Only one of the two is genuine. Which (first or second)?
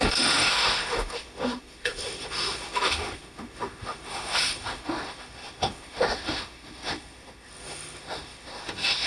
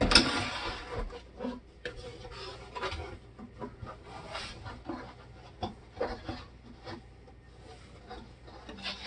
second